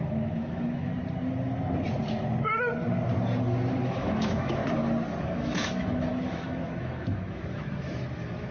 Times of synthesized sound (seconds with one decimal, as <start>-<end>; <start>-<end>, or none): 0.0-0.9; 3.8-4.6; 5.2-8.5